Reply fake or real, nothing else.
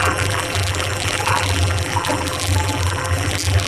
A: fake